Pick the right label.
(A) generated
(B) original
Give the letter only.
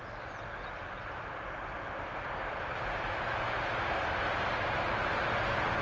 B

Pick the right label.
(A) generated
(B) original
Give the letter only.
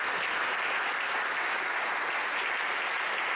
B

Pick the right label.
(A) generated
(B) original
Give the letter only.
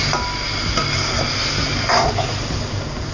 B